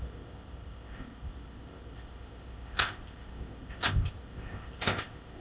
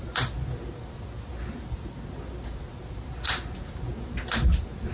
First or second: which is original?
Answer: second